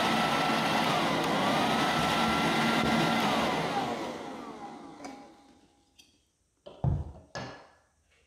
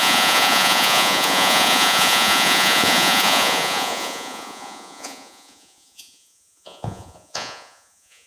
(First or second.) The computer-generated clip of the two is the second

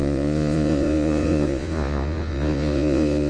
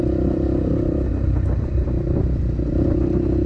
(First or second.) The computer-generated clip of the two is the first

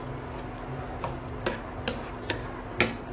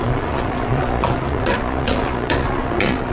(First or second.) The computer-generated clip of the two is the second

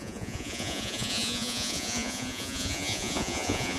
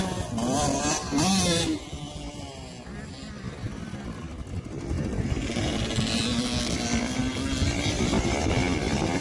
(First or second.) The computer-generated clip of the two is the first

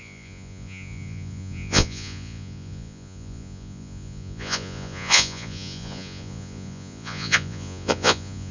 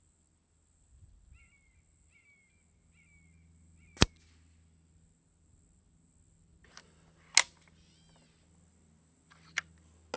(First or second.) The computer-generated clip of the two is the first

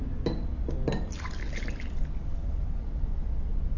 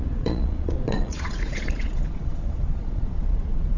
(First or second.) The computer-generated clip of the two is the second